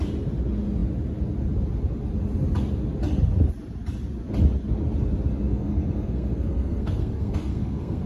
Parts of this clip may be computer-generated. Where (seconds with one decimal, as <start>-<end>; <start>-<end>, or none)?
5.5-8.1